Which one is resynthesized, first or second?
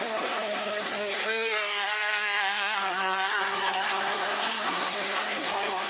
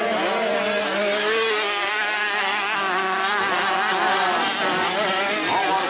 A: first